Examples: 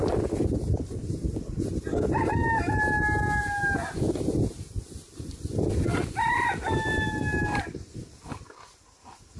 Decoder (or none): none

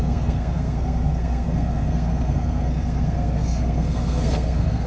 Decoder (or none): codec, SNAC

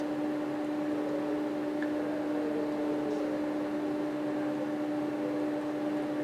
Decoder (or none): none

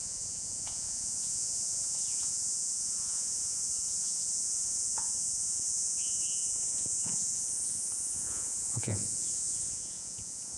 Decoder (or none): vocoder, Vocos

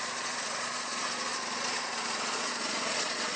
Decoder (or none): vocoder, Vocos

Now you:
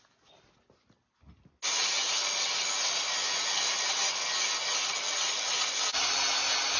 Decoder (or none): none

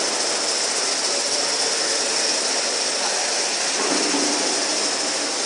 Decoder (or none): none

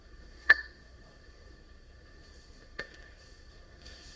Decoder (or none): codec, SNAC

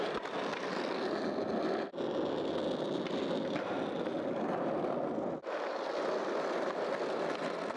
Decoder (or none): none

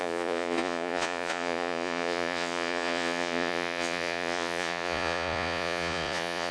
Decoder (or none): vocoder, Vocos